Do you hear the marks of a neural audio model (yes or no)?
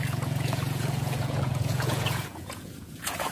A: yes